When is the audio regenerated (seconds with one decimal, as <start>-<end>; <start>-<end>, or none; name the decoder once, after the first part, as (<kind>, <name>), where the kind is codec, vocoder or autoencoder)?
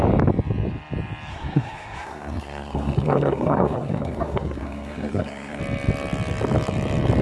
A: 1.3-5.6 (codec, SNAC)